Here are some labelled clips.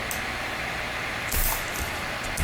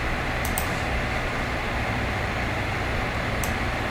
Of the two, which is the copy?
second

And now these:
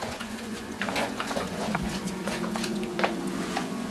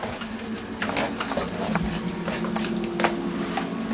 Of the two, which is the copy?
first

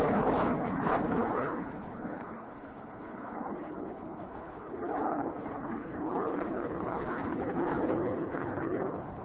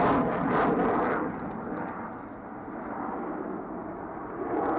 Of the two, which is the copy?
first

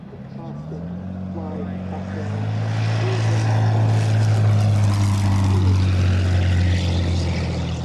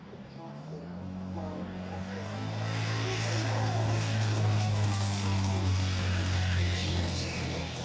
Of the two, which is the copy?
second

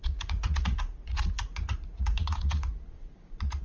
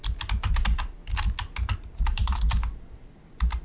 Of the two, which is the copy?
first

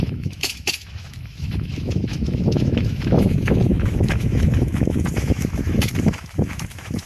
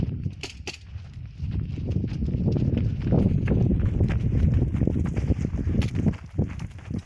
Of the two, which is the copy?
first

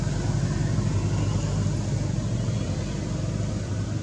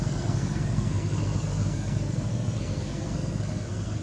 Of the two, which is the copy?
second